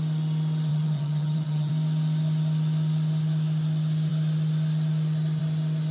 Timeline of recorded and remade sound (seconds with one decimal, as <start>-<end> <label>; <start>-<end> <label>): 0.0-0.7 recorded; 0.7-1.7 remade; 1.7-5.9 recorded